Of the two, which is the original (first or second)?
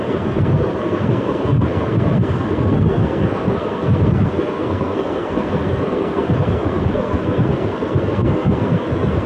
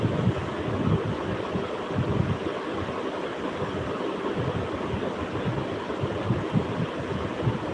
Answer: second